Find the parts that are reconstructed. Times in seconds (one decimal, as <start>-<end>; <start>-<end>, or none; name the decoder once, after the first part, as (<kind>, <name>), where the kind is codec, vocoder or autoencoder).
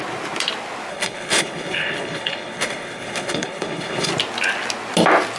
0.9-4.1 (codec, HILCodec)